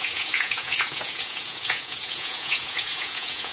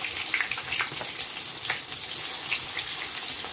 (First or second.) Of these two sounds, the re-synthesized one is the first